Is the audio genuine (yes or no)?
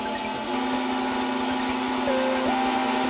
yes